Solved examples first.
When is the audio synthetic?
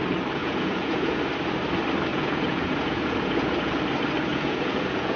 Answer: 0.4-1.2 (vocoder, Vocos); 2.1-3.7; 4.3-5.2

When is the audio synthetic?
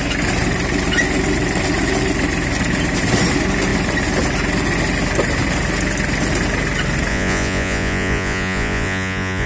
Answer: 7.1-9.5 (vocoder, Vocos)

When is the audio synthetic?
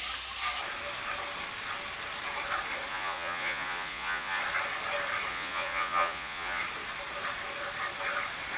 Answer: 2.9-4.4 (vocoder, Vocos); 5.3-6.6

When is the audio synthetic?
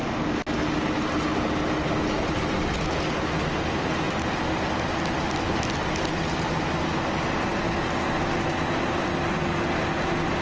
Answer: none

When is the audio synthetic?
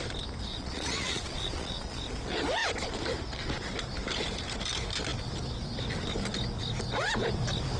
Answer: 0.5-2.0 (vocoder, Vocos)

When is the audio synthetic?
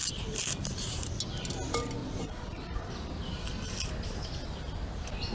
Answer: 2.0-2.9 (vocoder, Vocos)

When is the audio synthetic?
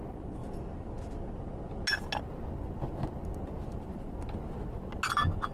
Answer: none